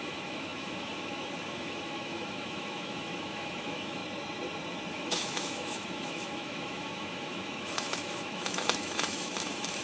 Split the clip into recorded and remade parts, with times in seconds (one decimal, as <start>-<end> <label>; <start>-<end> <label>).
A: 0.0-4.0 remade; 4.0-4.9 recorded; 4.9-9.8 remade